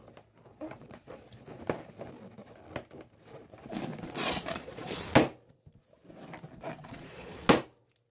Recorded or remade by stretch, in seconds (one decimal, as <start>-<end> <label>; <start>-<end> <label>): 0.0-0.5 recorded; 0.5-1.6 remade; 1.6-3.9 recorded; 3.9-5.0 remade; 5.0-6.8 recorded; 6.8-7.4 remade; 7.4-8.1 recorded